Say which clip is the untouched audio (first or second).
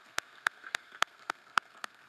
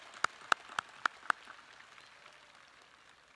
second